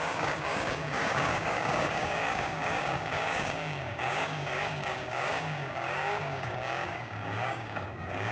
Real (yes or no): no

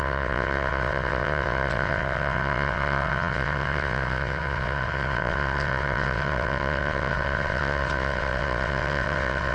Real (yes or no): no